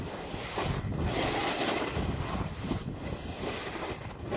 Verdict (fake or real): real